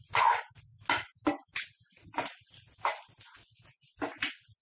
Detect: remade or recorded recorded